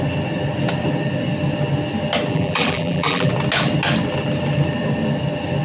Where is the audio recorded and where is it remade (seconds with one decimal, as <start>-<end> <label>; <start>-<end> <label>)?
0.0-2.3 recorded; 2.3-3.3 remade; 3.3-5.6 recorded